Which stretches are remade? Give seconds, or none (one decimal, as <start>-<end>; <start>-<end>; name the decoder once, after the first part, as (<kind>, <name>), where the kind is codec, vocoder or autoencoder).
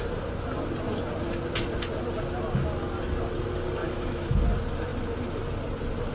3.8-4.4 (autoencoder, DAC-VAE)